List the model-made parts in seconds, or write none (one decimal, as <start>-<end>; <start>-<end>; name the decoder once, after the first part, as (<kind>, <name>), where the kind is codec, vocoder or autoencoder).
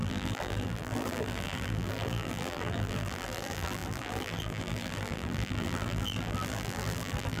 0.0-7.4 (vocoder, BigVGAN v2)